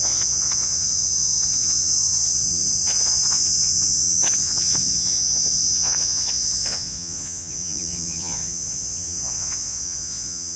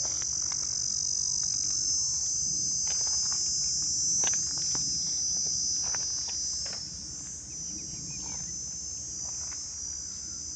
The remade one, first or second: first